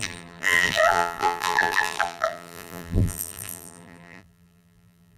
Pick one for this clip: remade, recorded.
remade